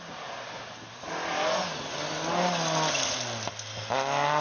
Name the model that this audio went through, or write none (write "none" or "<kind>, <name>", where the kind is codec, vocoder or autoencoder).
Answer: none